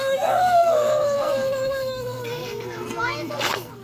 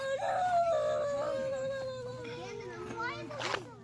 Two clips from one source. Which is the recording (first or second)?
second